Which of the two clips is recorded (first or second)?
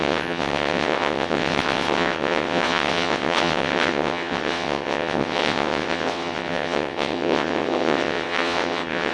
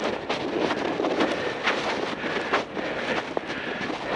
second